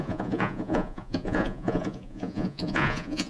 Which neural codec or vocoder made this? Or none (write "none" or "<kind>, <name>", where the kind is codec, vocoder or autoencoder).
vocoder, Vocos